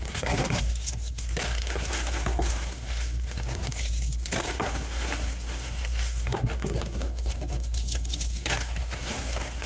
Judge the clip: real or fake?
fake